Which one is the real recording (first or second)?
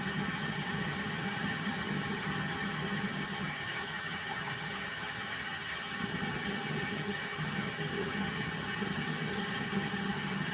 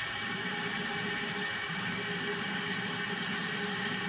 second